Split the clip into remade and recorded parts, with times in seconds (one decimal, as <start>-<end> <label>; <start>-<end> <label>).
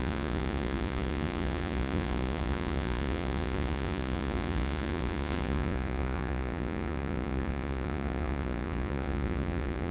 0.0-9.9 remade